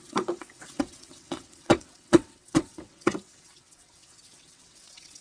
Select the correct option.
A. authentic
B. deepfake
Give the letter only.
B